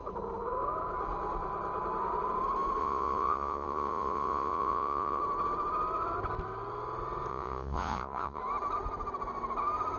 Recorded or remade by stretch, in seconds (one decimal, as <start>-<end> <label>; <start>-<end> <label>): 0.0-2.8 recorded; 2.8-5.2 remade; 5.2-7.3 recorded; 7.3-8.4 remade; 8.4-10.0 recorded